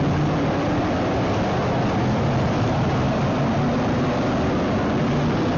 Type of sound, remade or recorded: recorded